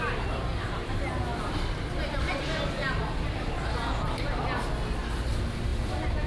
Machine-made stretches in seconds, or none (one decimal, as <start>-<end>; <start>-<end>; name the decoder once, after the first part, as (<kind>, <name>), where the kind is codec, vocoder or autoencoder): none